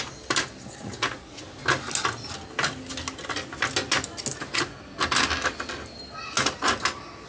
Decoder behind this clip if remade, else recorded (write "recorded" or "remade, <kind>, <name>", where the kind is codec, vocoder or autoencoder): recorded